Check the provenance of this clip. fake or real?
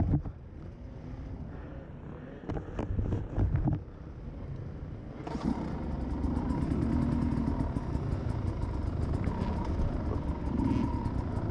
real